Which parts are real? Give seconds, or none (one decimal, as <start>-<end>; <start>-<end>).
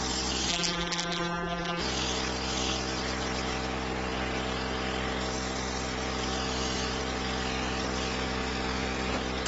0.0-0.5; 1.8-9.5